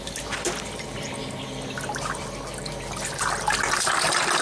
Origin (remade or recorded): recorded